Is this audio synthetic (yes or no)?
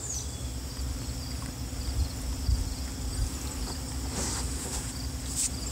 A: no